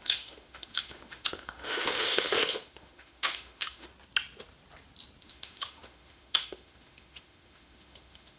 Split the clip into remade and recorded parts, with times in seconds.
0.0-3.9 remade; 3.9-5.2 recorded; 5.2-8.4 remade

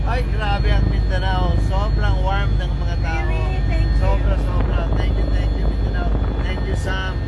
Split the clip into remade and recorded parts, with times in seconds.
0.0-7.3 recorded

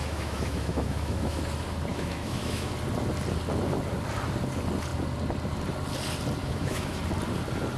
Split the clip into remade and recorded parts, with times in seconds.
0.0-1.4 remade; 1.4-1.9 recorded; 1.9-2.7 remade; 2.7-6.4 recorded; 6.4-7.0 remade; 7.0-7.8 recorded

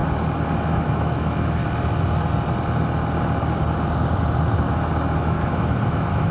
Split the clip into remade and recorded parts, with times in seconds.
0.0-0.6 recorded; 0.6-1.6 remade; 1.6-5.2 recorded; 5.2-6.3 remade

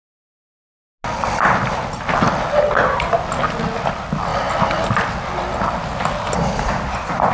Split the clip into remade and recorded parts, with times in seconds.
0.0-7.3 recorded

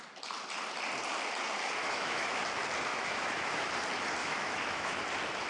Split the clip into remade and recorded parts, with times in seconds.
0.0-1.8 recorded; 1.8-2.4 remade; 2.4-2.9 recorded; 2.9-3.7 remade; 3.7-4.2 recorded; 4.2-5.0 remade; 5.0-5.5 recorded